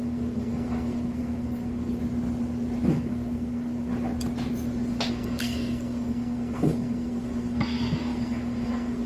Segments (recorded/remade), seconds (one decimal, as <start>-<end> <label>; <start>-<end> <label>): 0.0-2.0 remade; 2.0-2.9 recorded; 2.9-3.9 remade; 3.9-5.1 recorded; 5.1-9.1 remade